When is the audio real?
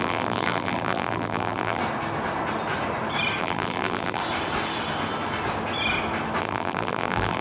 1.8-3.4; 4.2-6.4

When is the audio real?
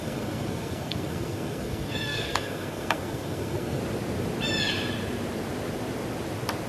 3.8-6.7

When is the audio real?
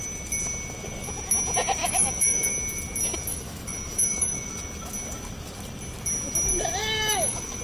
0.0-1.8; 2.5-3.3; 4.5-6.8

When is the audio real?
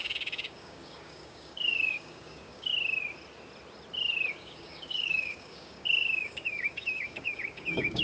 2.7-4.3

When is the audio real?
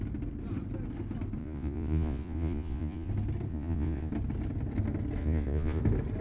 0.0-1.4; 3.1-3.5; 4.1-5.2; 5.8-6.2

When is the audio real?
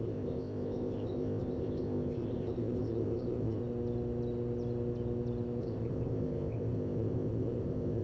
3.6-5.6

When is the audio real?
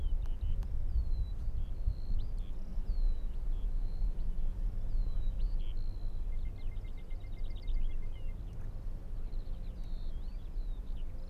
0.0-2.7; 5.6-10.3; 10.8-11.3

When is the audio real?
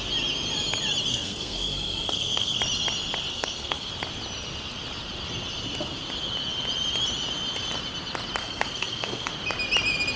0.0-1.1; 2.6-3.3; 3.9-8.4; 9.3-10.2